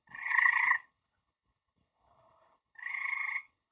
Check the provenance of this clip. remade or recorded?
remade